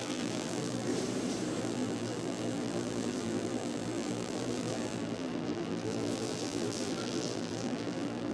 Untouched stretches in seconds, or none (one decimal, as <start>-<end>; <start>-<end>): 0.9-1.6